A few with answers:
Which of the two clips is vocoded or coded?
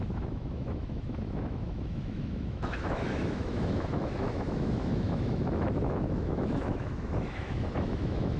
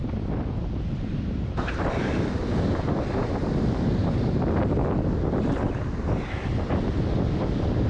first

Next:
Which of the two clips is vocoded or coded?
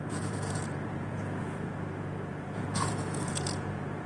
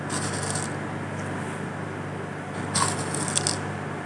first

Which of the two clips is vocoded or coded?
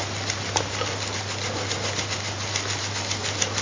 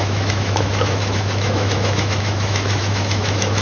second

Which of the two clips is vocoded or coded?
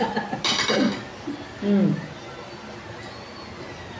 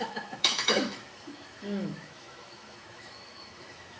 second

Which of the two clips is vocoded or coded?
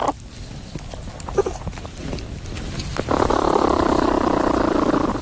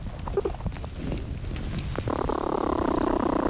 first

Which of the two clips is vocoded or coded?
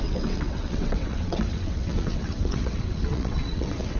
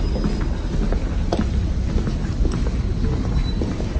first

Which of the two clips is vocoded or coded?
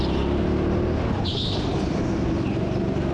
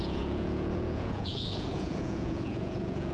second